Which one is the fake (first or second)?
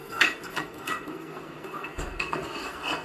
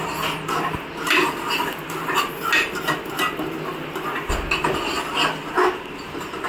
first